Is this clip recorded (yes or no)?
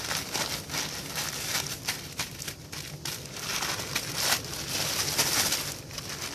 yes